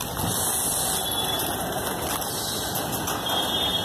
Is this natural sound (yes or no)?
yes